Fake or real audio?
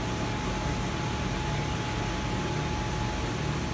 real